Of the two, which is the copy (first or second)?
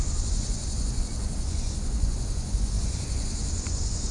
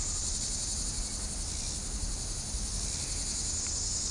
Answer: first